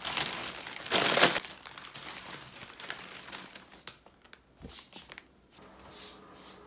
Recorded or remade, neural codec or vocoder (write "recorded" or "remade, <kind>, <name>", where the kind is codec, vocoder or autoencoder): recorded